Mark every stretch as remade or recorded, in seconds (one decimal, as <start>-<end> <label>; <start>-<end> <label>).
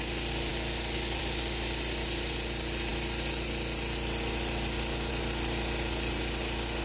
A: 0.0-6.8 recorded